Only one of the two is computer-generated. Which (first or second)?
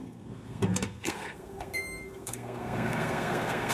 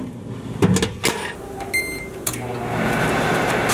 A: first